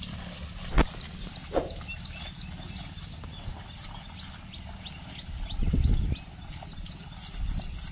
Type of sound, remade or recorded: recorded